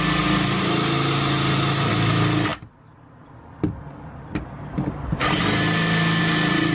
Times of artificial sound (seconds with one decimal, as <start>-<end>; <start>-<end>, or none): none